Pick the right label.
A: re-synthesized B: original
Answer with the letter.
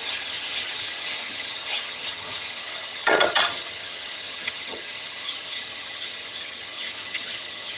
A